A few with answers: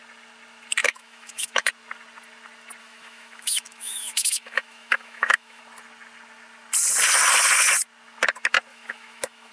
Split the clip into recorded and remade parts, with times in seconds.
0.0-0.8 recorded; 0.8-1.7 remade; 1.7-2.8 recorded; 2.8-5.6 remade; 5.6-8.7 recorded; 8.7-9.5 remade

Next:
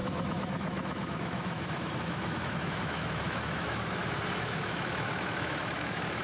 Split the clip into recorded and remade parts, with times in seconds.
0.0-6.2 remade

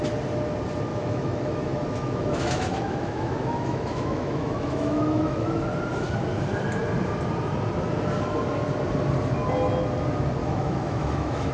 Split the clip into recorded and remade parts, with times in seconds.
0.0-0.9 recorded; 0.9-5.6 remade; 5.6-10.4 recorded; 10.4-11.5 remade

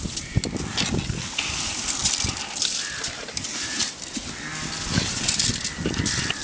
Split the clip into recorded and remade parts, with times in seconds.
0.0-6.4 recorded